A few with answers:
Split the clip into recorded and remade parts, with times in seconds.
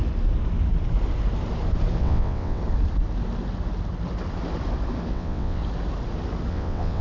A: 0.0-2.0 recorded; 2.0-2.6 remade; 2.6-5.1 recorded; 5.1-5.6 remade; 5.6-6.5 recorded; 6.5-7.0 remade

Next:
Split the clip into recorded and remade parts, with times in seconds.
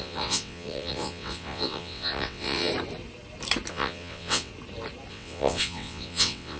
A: 0.0-2.7 remade; 2.7-3.7 recorded; 3.7-4.5 remade; 4.5-5.1 recorded; 5.1-6.6 remade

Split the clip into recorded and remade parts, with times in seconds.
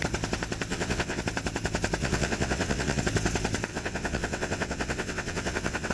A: 0.0-0.7 recorded; 0.7-1.2 remade; 1.2-2.0 recorded; 2.0-3.0 remade; 3.0-3.7 recorded; 3.7-5.9 remade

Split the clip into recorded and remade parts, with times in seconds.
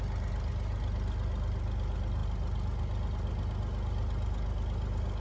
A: 0.0-5.2 recorded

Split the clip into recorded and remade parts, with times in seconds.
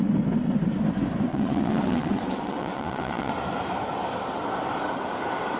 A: 0.0-1.3 recorded; 1.3-3.3 remade; 3.3-5.6 recorded